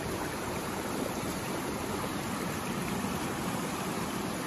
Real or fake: fake